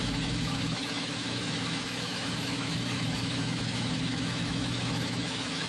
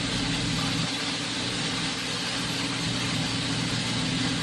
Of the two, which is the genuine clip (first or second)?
second